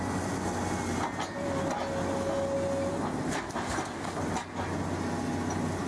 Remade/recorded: recorded